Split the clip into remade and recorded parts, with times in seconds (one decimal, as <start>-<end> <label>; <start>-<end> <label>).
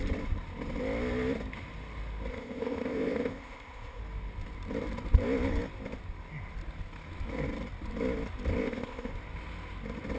0.0-2.3 recorded; 2.3-4.0 remade; 4.0-8.6 recorded; 8.6-9.1 remade; 9.1-10.2 recorded